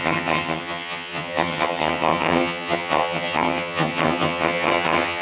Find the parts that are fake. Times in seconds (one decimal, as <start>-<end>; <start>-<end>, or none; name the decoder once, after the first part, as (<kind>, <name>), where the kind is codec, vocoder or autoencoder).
0.0-5.2 (vocoder, HiFi-GAN)